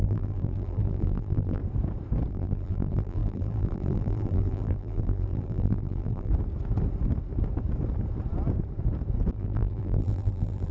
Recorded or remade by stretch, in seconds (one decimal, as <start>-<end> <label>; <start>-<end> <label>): 0.0-1.6 remade; 1.6-2.3 recorded; 2.3-6.3 remade; 6.3-9.3 recorded; 9.3-10.7 remade